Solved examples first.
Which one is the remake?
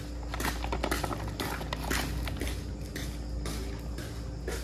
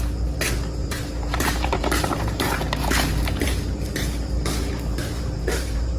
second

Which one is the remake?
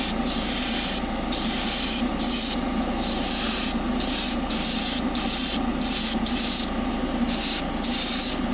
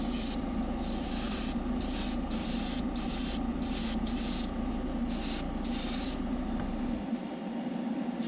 second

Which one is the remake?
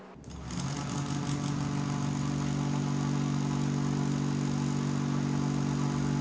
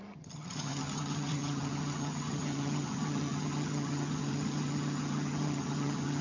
second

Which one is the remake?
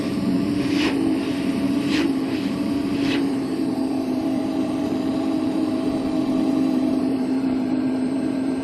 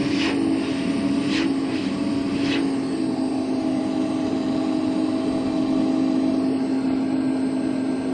first